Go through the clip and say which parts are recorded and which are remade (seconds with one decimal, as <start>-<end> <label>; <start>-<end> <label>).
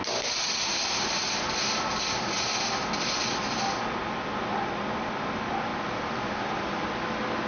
0.0-5.7 recorded; 5.7-6.3 remade; 6.3-7.5 recorded